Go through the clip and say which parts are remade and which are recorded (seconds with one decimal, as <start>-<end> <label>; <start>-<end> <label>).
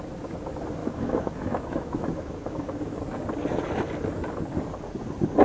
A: 0.0-0.8 recorded; 0.8-3.0 remade; 3.0-5.4 recorded